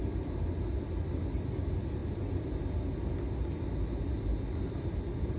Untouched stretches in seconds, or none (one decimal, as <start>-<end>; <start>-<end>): 0.0-5.4